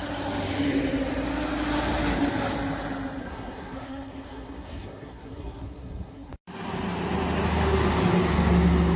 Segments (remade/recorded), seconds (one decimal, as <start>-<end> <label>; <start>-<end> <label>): 0.0-3.2 recorded; 3.2-6.3 remade; 6.3-9.0 recorded